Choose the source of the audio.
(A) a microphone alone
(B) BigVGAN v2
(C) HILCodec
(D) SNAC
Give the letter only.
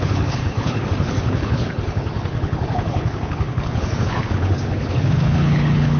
C